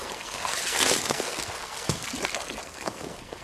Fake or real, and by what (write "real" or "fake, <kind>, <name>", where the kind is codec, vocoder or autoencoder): fake, codec, SNAC